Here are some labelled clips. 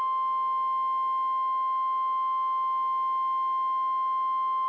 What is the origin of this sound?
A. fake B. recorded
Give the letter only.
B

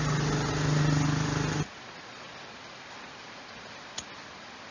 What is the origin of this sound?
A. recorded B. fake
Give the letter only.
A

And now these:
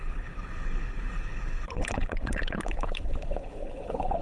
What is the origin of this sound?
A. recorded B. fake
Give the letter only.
B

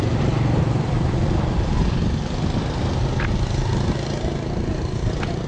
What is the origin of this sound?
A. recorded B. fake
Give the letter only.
A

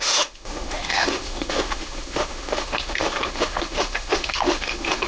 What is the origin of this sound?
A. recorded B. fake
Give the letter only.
B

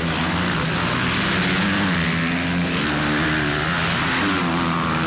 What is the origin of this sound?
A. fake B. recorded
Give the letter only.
B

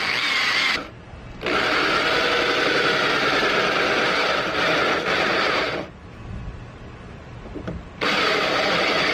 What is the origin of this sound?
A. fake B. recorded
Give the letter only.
B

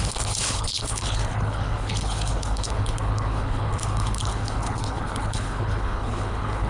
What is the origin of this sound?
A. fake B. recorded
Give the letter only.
A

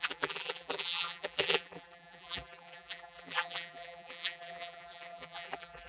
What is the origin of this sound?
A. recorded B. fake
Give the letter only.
B